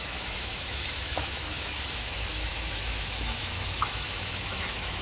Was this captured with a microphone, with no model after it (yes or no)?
no